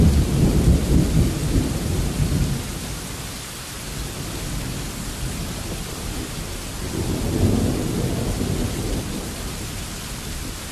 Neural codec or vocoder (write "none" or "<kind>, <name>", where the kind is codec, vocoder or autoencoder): none